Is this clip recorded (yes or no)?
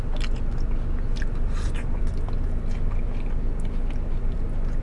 yes